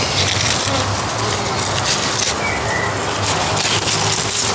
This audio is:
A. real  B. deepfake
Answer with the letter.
A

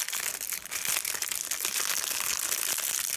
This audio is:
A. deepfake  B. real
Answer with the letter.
B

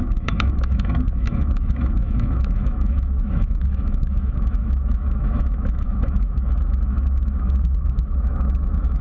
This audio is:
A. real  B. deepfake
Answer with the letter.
B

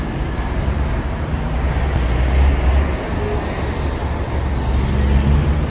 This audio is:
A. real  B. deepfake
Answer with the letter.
A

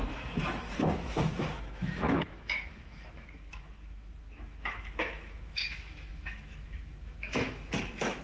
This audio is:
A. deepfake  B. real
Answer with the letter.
A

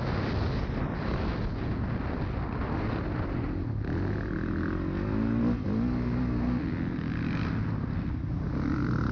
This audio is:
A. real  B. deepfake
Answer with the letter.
A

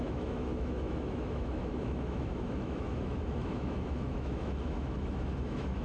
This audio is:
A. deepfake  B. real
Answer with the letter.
A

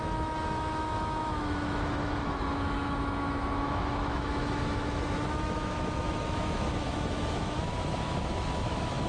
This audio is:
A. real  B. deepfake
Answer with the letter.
B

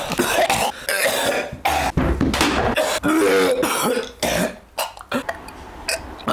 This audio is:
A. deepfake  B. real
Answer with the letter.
B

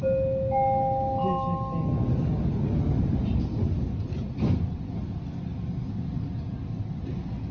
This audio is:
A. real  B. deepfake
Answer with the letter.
A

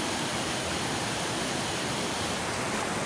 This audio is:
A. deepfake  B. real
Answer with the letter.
B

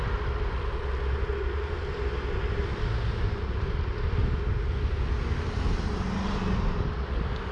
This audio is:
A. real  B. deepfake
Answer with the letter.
A